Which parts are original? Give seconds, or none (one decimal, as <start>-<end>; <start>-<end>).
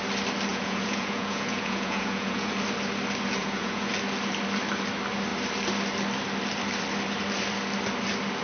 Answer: 0.0-0.5; 2.5-3.4; 3.9-8.4